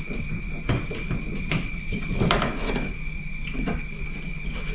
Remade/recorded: recorded